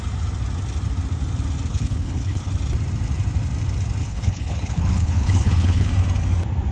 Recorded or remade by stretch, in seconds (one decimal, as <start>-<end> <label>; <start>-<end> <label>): 0.0-1.7 recorded; 1.7-2.5 remade; 2.5-4.0 recorded; 4.0-5.9 remade; 5.9-6.7 recorded